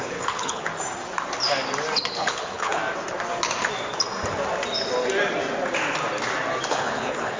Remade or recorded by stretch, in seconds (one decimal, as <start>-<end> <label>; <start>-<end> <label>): 0.0-0.7 remade; 0.7-2.1 recorded; 2.1-2.8 remade; 2.8-6.7 recorded; 6.7-7.4 remade